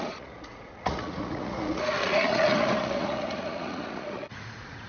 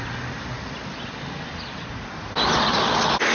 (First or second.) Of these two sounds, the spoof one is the first